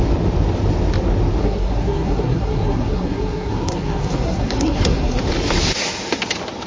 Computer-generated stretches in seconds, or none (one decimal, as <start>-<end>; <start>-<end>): 1.4-5.2